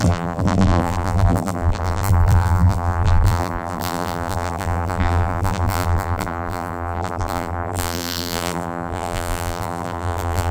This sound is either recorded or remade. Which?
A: remade